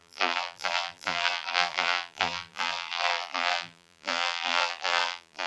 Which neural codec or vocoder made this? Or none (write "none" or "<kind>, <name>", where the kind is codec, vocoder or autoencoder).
vocoder, BigVGAN v2